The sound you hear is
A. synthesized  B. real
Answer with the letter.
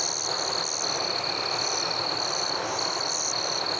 B